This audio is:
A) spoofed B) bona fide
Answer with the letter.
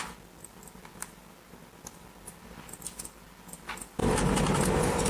B